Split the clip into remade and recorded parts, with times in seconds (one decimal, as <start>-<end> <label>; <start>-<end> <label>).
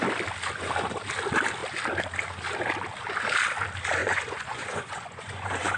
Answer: 0.0-4.0 recorded; 4.0-5.8 remade